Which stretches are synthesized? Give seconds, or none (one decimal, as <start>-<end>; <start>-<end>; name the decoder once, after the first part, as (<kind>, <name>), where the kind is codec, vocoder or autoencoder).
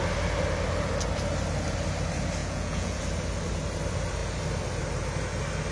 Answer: 2.4-3.0 (vocoder, Vocos)